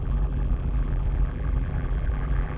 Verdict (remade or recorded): remade